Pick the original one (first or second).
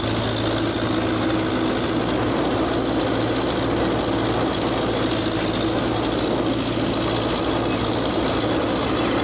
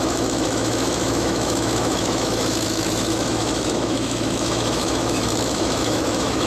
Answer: first